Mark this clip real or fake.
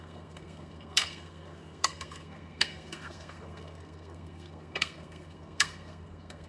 fake